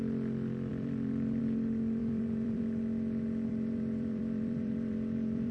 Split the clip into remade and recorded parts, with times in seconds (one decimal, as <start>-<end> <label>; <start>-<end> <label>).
0.0-0.7 recorded; 0.7-1.4 remade; 1.4-2.0 recorded; 2.0-2.6 remade; 2.6-3.5 recorded; 3.5-5.5 remade